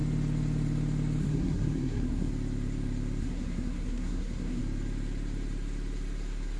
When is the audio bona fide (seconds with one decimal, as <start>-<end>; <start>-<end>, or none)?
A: 0.0-1.2; 2.3-3.2; 4.6-6.6